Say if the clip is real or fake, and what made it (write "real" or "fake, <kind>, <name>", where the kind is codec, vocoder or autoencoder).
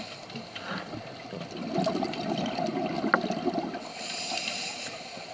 real